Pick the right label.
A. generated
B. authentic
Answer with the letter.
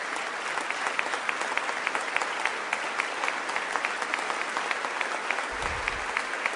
B